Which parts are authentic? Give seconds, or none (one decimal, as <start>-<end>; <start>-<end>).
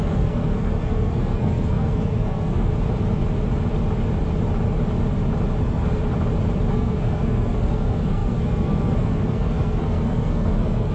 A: 2.7-5.6; 6.0-6.7